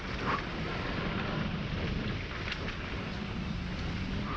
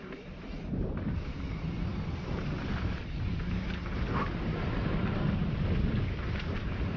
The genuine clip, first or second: first